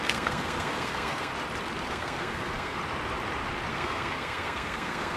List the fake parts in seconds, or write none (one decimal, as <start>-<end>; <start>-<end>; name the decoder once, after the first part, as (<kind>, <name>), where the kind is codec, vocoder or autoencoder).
0.0-1.3 (codec, SNAC); 1.9-2.8; 3.7-5.2